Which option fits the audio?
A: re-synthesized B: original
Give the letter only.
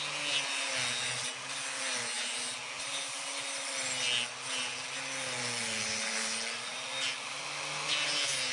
B